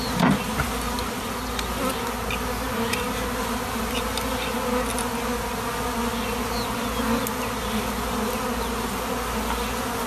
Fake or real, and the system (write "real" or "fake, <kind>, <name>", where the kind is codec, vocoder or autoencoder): real